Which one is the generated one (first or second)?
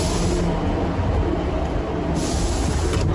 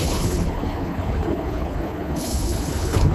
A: second